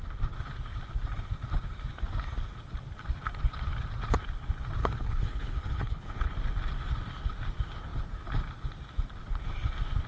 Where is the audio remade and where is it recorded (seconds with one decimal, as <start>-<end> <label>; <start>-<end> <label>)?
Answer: 0.0-4.8 recorded; 4.8-6.3 remade; 6.3-10.1 recorded